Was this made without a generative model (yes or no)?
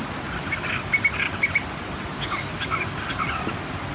yes